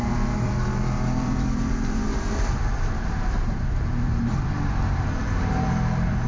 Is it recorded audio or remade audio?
remade